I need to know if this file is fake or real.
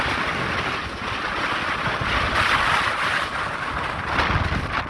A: real